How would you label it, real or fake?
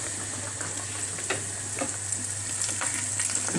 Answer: fake